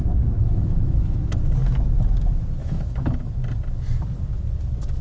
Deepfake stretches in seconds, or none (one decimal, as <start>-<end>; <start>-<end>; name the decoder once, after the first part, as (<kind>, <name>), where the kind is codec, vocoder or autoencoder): 0.4-1.2 (autoencoder, DAC-VAE); 2.6-3.3